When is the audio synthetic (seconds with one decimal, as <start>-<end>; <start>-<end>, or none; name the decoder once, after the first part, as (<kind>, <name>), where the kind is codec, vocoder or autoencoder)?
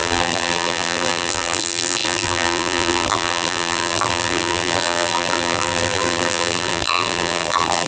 0.0-7.9 (vocoder, BigVGAN v2)